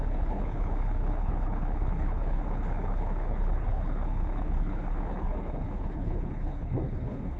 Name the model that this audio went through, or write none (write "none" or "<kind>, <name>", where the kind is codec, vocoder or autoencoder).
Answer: codec, HILCodec